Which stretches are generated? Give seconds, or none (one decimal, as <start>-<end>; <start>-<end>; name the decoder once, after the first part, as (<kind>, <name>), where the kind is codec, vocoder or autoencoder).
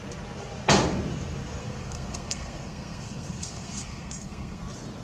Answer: 1.6-4.6 (codec, SNAC)